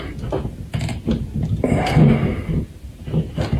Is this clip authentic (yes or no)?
yes